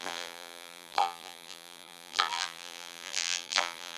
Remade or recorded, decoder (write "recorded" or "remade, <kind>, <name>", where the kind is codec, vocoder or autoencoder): remade, vocoder, BigVGAN v2